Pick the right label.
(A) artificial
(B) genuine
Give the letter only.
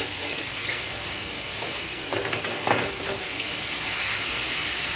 A